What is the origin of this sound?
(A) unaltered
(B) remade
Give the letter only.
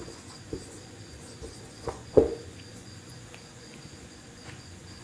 B